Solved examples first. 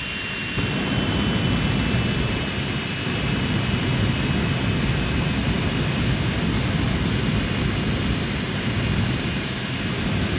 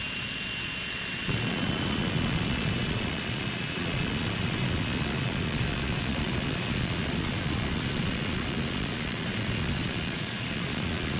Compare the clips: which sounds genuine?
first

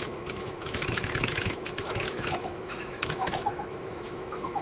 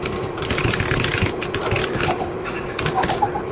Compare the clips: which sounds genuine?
second